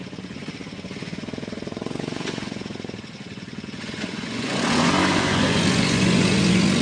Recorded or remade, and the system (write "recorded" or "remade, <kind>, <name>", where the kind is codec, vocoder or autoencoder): remade, vocoder, Vocos